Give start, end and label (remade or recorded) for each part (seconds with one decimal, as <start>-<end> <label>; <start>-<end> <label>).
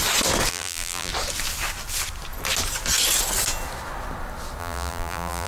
0.0-0.5 recorded; 0.5-1.1 remade; 1.1-4.6 recorded; 4.6-5.5 remade